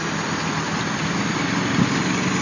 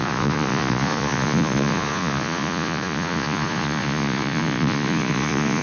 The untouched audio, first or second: first